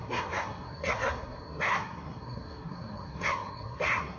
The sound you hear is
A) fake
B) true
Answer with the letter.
A